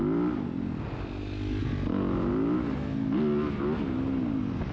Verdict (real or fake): real